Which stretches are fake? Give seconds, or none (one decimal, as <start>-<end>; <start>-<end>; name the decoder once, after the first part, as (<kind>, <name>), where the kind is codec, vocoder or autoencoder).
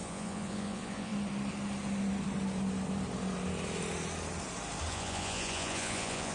0.0-1.1 (vocoder, Vocos); 4.9-6.3